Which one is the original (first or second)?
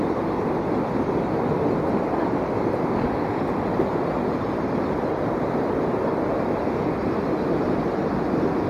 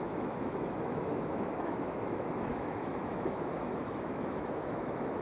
first